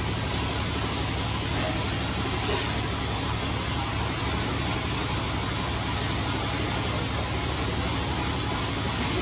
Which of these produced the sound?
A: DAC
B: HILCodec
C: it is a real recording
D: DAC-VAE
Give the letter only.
C